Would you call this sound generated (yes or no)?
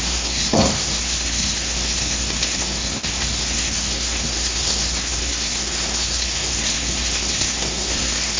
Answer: yes